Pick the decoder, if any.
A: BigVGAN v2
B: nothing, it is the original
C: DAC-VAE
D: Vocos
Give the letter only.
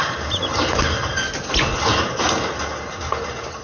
B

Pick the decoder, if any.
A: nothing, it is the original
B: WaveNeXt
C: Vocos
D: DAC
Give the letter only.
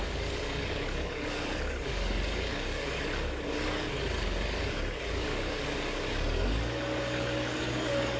D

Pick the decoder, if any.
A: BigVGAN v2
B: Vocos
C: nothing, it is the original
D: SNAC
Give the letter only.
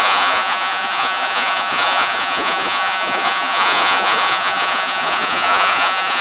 B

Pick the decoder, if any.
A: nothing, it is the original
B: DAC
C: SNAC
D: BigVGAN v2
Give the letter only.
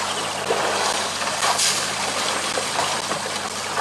A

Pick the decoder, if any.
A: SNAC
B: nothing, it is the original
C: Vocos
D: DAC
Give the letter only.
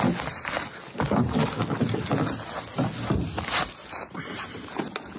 B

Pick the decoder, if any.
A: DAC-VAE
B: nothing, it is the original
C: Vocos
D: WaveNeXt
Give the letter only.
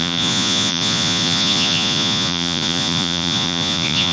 C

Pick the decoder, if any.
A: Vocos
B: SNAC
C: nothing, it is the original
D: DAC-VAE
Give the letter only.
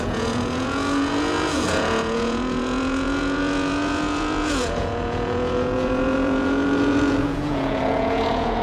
A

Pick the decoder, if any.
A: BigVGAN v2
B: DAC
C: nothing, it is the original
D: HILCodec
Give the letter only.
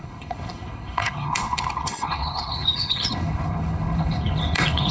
D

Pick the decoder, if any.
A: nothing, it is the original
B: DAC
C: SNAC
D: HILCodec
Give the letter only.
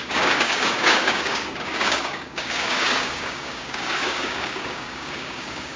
B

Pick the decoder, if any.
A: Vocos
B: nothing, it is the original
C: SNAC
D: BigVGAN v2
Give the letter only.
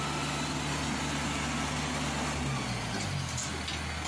B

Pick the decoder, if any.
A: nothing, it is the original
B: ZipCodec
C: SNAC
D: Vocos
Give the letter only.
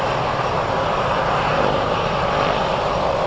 A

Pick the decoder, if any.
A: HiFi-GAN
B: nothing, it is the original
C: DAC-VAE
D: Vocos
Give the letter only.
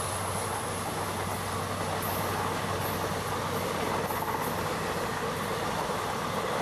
B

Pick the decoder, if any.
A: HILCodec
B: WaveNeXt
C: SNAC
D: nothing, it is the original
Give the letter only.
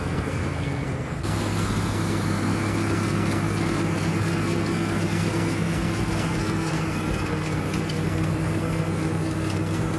C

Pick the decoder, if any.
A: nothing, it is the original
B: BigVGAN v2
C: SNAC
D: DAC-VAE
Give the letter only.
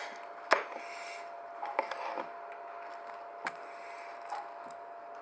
A